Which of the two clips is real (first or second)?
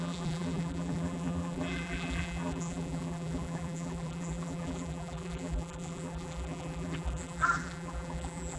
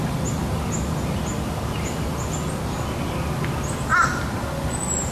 second